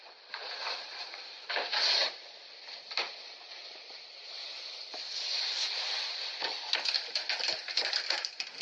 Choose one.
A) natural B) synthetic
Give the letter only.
A